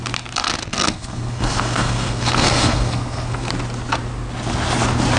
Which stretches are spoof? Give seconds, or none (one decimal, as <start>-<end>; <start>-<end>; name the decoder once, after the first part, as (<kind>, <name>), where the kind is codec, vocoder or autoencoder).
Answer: 0.6-3.5 (codec, SNAC)